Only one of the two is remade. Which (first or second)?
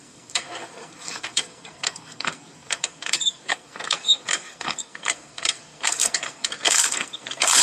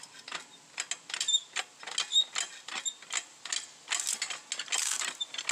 first